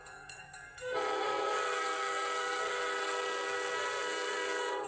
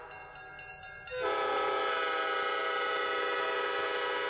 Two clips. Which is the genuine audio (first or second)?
second